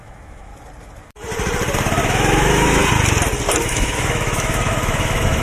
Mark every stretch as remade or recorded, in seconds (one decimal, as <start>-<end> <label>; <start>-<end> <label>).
0.0-0.5 remade; 0.5-2.0 recorded; 2.0-2.8 remade; 2.8-3.6 recorded; 3.6-5.4 remade